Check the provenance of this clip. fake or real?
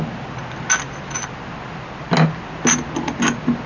real